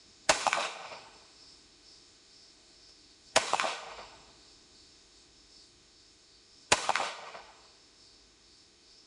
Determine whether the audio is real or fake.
fake